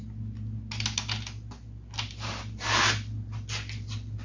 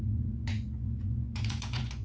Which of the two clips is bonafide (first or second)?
first